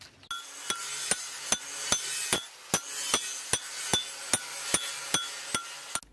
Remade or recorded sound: recorded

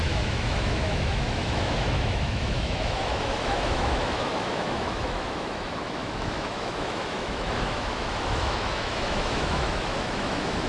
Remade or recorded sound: remade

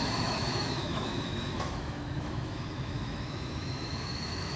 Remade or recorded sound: remade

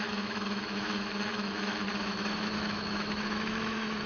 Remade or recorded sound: remade